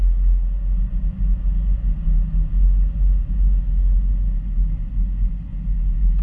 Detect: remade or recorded recorded